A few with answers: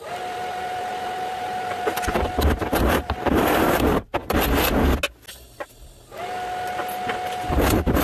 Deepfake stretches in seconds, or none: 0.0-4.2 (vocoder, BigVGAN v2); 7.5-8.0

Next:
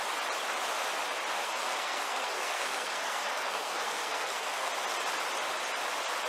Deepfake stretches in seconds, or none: 1.4-4.7 (codec, SNAC)

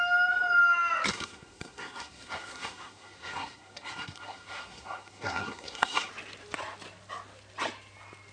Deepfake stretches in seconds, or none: 1.1-6.1 (codec, SNAC)

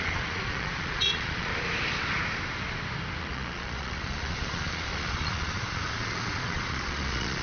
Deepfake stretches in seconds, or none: 0.0-1.5 (vocoder, Vocos); 3.2-7.4

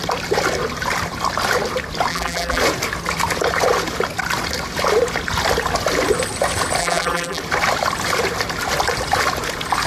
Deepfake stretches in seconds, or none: 2.1-2.6 (vocoder, BigVGAN v2); 6.8-7.4